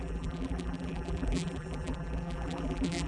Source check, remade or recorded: remade